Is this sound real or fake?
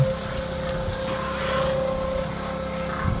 real